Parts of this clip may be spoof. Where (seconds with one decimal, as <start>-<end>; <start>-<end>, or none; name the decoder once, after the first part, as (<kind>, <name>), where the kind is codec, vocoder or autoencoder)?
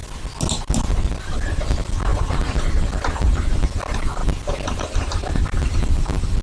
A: 1.2-4.2 (vocoder, BigVGAN v2); 4.7-6.4